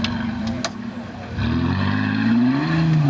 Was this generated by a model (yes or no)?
no